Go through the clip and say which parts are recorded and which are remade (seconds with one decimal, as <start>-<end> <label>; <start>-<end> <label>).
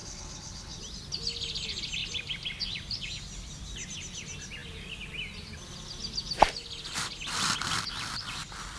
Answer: 0.0-0.8 remade; 0.8-8.8 recorded